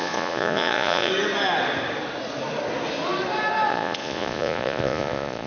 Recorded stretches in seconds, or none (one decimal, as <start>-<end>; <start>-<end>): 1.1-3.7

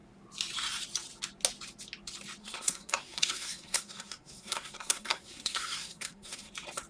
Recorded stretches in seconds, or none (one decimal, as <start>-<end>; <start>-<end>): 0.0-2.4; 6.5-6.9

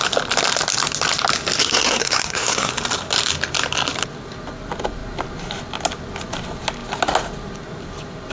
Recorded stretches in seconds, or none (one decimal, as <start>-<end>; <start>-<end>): 0.0-1.6; 2.7-8.3

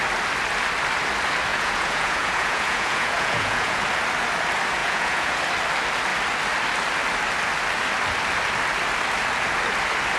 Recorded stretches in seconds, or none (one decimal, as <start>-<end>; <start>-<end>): 0.0-1.5; 3.8-4.8; 5.4-10.2

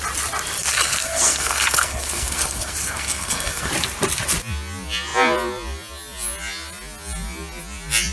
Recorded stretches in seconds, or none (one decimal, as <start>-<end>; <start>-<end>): 0.0-0.6; 3.7-8.1

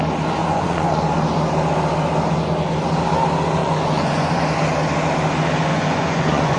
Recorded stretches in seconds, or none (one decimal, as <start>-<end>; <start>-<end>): 0.0-0.4; 1.0-3.6; 4.4-5.7